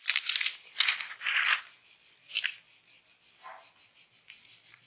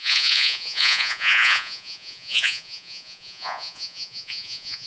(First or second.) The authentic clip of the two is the first